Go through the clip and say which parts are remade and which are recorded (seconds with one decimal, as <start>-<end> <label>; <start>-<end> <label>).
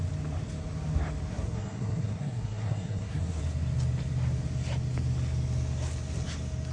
0.0-1.3 recorded; 1.3-3.4 remade; 3.4-6.7 recorded